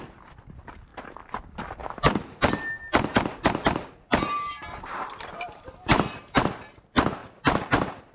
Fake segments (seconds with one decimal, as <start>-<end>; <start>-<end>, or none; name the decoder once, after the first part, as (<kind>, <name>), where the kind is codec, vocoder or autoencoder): 1.8-2.4 (vocoder, BigVGAN v2); 2.9-6.5; 7.2-8.1